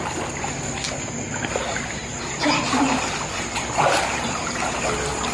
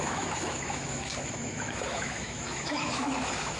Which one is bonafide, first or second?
first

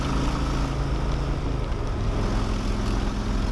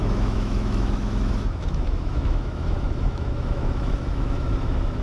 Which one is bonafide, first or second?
first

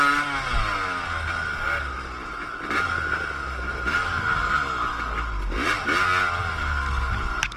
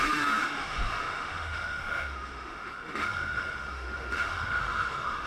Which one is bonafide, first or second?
first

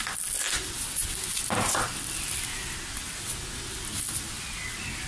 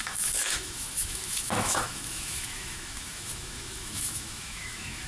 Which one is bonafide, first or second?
first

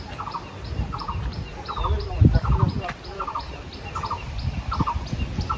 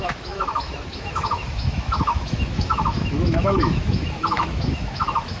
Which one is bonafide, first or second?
first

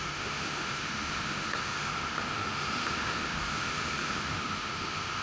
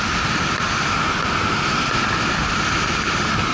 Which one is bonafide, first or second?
second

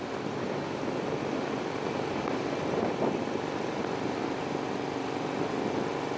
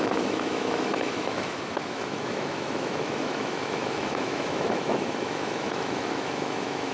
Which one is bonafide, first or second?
first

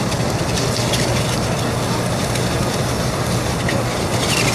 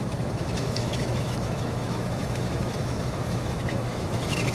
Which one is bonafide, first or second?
first